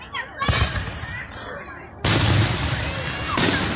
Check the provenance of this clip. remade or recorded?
recorded